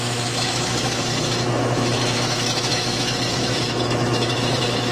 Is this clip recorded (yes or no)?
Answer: no